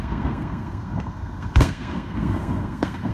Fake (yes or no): yes